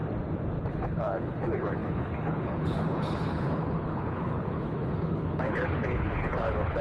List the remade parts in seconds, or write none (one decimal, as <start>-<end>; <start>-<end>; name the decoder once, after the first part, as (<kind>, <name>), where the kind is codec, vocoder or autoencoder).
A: 0.7-6.8 (codec, HILCodec)